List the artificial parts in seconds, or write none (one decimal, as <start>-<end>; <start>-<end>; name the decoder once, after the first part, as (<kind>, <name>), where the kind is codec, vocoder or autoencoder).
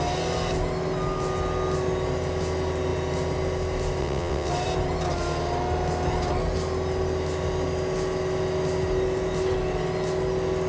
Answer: 4.0-4.5 (vocoder, WaveNeXt)